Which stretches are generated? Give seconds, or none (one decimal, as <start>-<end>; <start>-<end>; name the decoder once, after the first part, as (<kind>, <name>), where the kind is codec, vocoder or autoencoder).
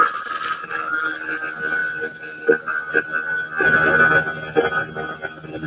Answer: none